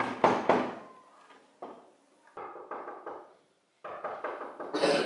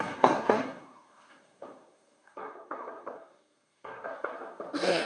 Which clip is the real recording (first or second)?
first